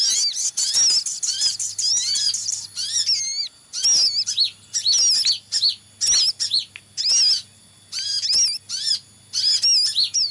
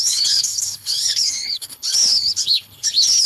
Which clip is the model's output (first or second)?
second